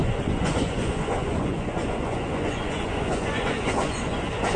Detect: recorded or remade remade